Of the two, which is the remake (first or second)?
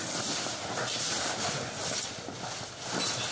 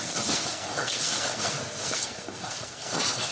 second